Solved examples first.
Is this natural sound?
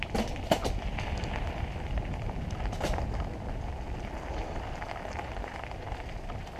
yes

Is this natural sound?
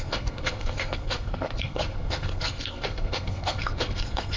no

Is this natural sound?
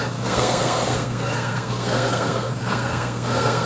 no